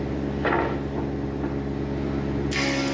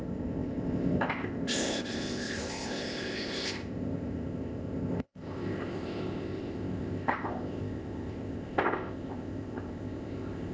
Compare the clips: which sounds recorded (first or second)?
first